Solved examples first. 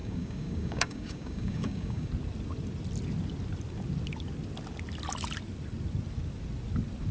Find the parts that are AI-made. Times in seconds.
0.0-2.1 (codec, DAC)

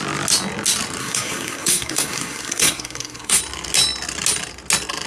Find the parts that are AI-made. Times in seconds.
1.0-3.4 (codec, SNAC)

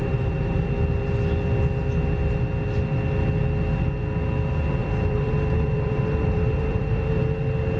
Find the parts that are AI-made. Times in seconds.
0.0-0.7 (vocoder, BigVGAN v2); 4.8-7.2

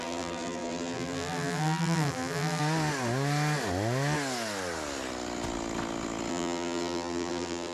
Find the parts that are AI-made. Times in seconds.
0.0-2.6 (vocoder, BigVGAN v2); 6.3-7.7

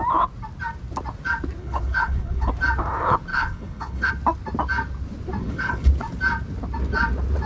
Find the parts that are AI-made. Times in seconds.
1.6-2.5 (codec, HILCodec); 3.3-4.1; 5.4-5.9